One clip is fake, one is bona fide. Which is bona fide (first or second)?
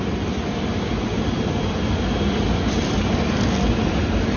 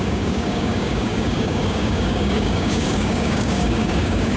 first